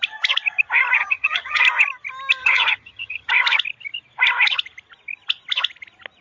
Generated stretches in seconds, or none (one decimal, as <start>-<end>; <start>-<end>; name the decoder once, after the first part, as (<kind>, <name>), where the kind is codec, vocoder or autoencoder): 1.0-1.6 (vocoder, HiFi-GAN); 2.4-3.3